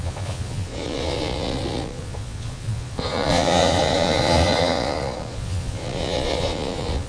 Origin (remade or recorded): remade